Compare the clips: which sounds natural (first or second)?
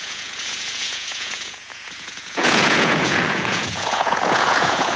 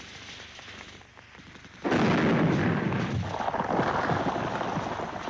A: second